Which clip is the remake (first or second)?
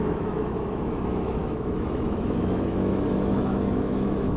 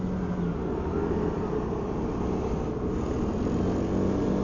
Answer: first